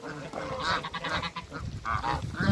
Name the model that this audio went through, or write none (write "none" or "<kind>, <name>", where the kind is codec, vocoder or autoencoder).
none